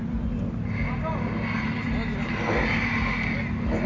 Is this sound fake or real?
real